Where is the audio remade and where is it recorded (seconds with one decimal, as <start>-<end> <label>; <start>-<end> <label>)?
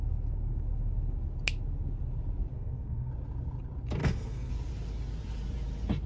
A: 0.0-2.5 recorded; 2.5-3.1 remade; 3.1-4.0 recorded; 4.0-4.5 remade; 4.5-6.1 recorded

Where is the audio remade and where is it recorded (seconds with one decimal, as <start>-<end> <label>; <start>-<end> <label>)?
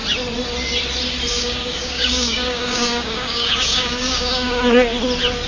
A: 0.0-1.3 recorded; 1.3-4.6 remade; 4.6-5.5 recorded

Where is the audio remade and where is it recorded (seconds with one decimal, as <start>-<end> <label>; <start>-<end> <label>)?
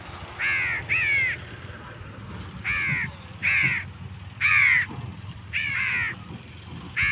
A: 0.0-5.1 recorded; 5.1-5.9 remade; 5.9-7.1 recorded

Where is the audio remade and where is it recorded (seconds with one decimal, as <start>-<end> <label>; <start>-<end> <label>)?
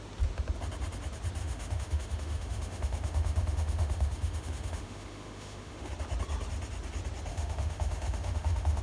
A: 0.0-1.4 recorded; 1.4-5.9 remade; 5.9-7.3 recorded; 7.3-8.8 remade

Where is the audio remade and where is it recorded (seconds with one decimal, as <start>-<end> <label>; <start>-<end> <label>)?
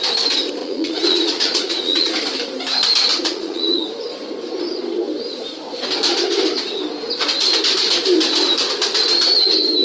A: 0.0-0.6 recorded; 0.6-2.1 remade; 2.1-3.1 recorded; 3.1-3.8 remade; 3.8-9.8 recorded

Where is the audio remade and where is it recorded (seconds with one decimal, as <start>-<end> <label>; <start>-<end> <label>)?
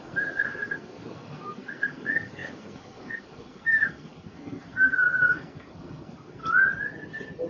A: 0.0-6.4 remade; 6.4-7.5 recorded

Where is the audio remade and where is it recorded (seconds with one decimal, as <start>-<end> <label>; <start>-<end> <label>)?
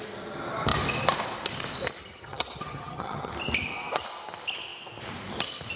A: 0.0-2.0 recorded; 2.0-3.3 remade; 3.3-5.8 recorded